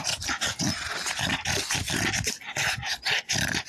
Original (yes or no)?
yes